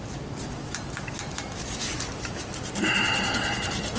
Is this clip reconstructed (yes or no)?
yes